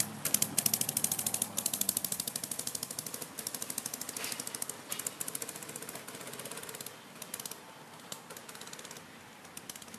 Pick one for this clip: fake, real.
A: real